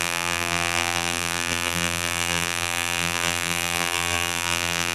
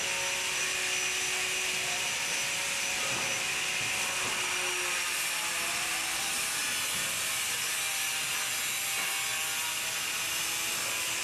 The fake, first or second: first